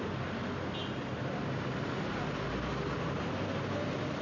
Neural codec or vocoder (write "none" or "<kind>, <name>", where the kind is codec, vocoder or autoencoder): none